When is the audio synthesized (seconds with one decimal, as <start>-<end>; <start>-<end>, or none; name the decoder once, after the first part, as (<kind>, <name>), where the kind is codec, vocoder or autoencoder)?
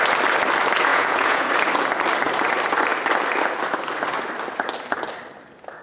0.9-1.5 (vocoder, Vocos)